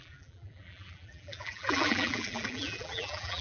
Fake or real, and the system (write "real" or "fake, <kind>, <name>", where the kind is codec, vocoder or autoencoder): fake, vocoder, BigVGAN v2